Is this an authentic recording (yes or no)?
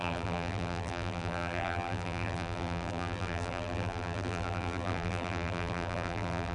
no